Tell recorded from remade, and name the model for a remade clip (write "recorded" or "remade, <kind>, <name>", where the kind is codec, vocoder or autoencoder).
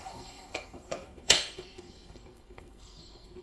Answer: remade, codec, SNAC